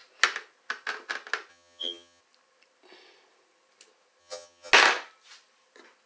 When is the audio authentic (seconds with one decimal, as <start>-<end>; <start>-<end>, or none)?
0.0-1.5; 2.2-4.2; 4.7-6.1